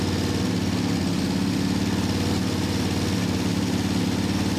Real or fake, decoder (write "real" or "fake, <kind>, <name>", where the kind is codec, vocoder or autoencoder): real